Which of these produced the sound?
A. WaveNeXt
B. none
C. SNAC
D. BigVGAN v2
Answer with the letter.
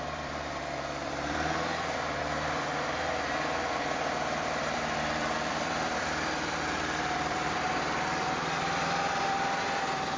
D